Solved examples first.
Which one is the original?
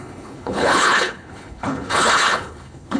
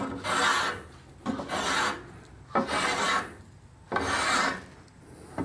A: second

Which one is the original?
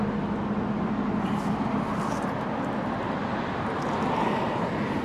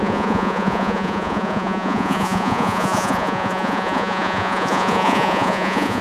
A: first